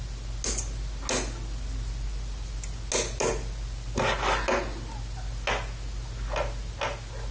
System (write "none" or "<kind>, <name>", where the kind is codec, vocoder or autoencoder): none